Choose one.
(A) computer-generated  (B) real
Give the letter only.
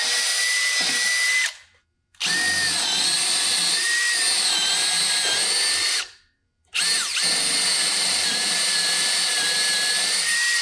B